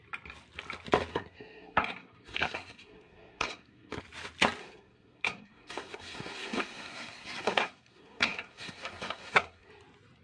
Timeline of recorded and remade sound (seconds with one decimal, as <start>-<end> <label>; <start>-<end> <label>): 0.0-1.1 recorded; 1.1-4.0 remade; 4.0-4.6 recorded; 4.6-9.7 remade; 9.7-10.2 recorded

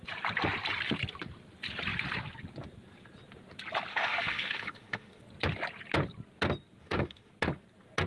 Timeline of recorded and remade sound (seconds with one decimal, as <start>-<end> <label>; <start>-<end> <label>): 0.0-3.9 recorded; 3.9-5.2 remade; 5.2-6.8 recorded; 6.8-7.3 remade; 7.3-8.1 recorded

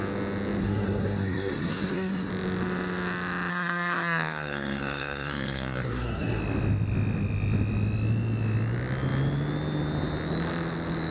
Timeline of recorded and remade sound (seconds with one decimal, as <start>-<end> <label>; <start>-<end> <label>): 0.0-0.6 recorded; 0.6-2.3 remade; 2.3-3.5 recorded; 3.5-6.4 remade; 6.4-11.1 recorded

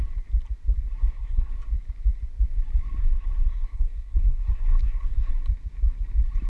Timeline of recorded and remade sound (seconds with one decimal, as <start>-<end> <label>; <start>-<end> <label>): 0.0-1.0 recorded; 1.0-1.5 remade; 1.5-3.0 recorded; 3.0-5.3 remade; 5.3-6.5 recorded

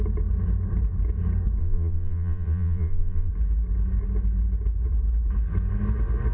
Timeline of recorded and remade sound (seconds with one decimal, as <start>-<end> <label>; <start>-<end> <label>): 0.0-1.6 recorded; 1.6-3.3 remade; 3.3-6.3 recorded

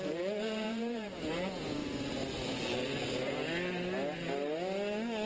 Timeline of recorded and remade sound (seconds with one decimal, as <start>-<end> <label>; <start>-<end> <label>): 0.0-1.8 remade; 1.8-5.3 recorded